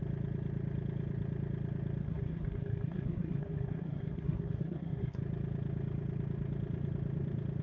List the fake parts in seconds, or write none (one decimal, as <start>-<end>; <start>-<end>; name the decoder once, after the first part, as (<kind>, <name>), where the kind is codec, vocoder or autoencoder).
2.0-5.2 (codec, SNAC)